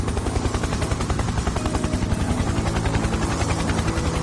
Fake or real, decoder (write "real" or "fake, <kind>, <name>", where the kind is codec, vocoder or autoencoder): real